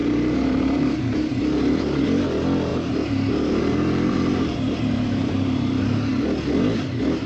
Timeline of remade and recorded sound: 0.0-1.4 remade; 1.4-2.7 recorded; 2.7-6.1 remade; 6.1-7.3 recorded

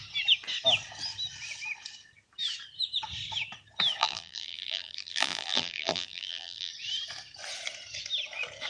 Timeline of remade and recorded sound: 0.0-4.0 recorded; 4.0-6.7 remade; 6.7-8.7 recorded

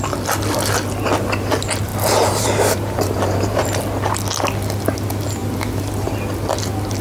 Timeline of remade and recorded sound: 0.0-1.9 recorded; 1.9-3.8 remade; 3.8-5.4 recorded; 5.4-5.9 remade; 5.9-7.0 recorded

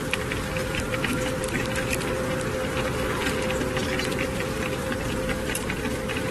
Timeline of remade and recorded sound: 0.0-0.6 recorded; 0.6-2.1 remade; 2.1-4.1 recorded; 4.1-4.9 remade; 4.9-6.3 recorded

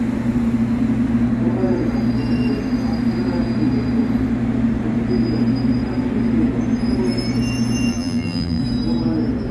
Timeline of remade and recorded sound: 0.0-7.9 recorded; 7.9-8.6 remade; 8.6-9.5 recorded

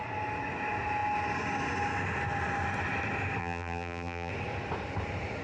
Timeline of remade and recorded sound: 0.0-3.4 recorded; 3.4-4.3 remade; 4.3-5.4 recorded

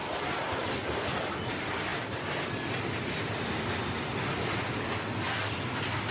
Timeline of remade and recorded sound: 0.0-6.1 recorded

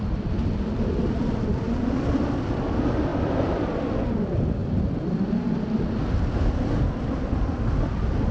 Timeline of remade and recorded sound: 0.0-3.1 recorded; 3.1-3.7 remade; 3.7-8.3 recorded